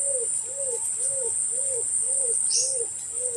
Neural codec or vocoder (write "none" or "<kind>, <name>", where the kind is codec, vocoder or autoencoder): none